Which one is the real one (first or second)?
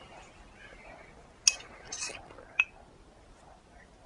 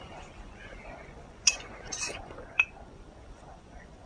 first